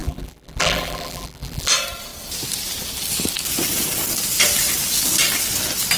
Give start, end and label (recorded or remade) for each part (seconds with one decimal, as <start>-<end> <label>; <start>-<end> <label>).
0.0-1.7 remade; 1.7-6.0 recorded